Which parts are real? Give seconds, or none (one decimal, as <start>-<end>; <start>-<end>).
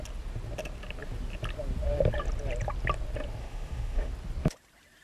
0.0-3.4; 4.1-5.0